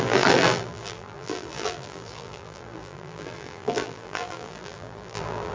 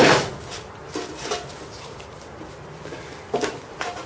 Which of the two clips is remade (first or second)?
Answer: first